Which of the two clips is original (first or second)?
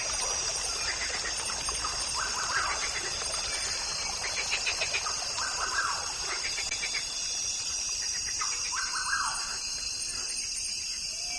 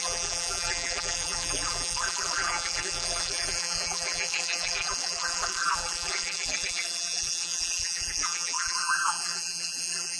first